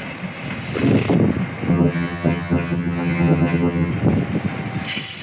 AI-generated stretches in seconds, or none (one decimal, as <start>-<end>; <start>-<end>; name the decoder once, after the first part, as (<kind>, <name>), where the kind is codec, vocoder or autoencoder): 1.7-3.9 (vocoder, HiFi-GAN)